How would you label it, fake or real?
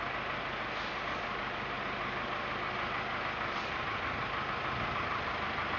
real